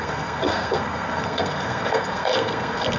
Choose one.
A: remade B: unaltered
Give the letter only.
A